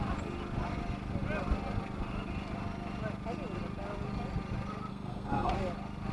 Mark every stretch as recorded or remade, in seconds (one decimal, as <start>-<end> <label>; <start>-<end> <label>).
0.0-4.9 recorded; 4.9-5.5 remade; 5.5-6.1 recorded